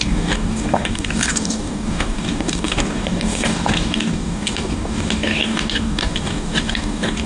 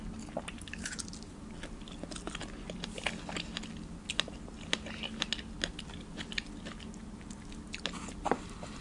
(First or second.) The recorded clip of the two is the second